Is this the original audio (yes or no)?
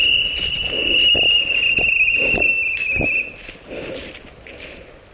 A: yes